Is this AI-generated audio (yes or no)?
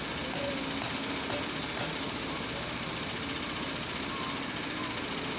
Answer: no